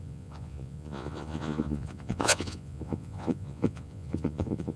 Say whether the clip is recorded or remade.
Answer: remade